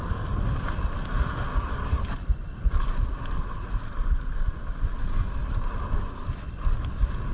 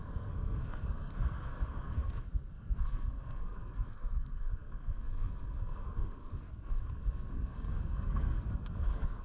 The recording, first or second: first